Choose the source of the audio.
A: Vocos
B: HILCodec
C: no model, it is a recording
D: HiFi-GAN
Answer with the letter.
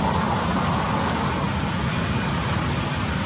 C